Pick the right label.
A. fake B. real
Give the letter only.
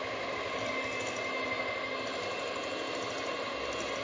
B